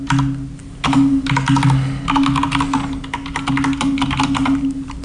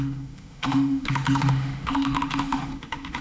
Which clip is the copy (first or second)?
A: second